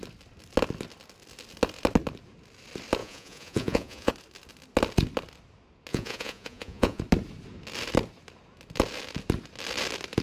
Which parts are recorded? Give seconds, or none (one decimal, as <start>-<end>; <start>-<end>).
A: 0.0-3.0; 4.1-5.9; 7.0-10.2